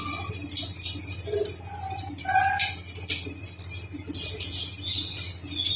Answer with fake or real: real